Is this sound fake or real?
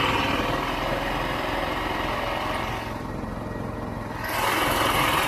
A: real